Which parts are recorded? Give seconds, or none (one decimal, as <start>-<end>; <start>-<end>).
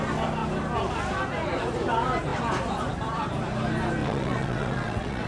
0.0-4.0